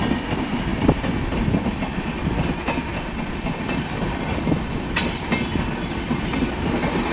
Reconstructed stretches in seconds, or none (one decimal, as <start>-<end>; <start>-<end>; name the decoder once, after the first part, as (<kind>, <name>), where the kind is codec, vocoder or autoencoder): none